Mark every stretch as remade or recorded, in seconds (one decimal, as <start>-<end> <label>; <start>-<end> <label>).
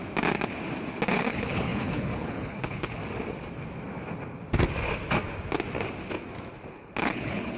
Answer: 0.0-1.1 recorded; 1.1-3.0 remade; 3.0-6.7 recorded; 6.7-7.6 remade